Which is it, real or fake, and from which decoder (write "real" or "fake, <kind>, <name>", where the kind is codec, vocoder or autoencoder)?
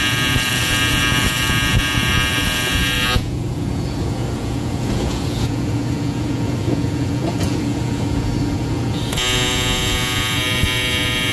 fake, vocoder, Vocos